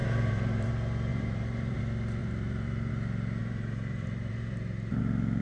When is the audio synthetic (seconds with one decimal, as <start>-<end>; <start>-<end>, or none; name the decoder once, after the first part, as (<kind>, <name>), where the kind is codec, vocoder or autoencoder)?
0.0-0.7 (vocoder, BigVGAN v2); 1.1-1.8; 2.2-2.9; 3.4-5.0